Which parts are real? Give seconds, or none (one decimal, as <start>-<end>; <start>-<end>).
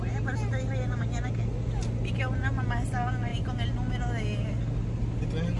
0.0-5.6